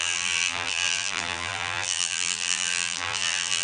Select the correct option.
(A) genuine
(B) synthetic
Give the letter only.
B